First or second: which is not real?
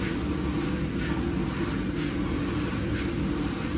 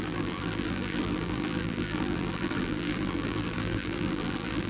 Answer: second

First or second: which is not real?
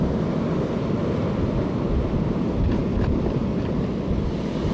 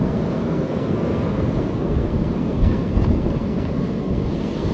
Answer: second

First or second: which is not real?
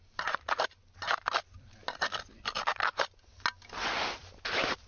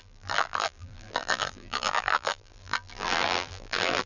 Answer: second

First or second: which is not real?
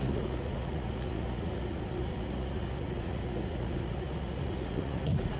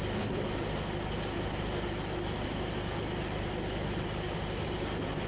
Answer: first